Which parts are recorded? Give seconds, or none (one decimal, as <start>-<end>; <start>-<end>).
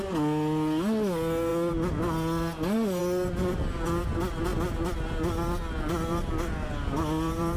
0.0-7.6